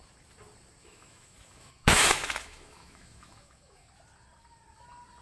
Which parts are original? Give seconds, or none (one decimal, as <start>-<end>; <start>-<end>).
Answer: 0.0-0.8; 3.9-5.2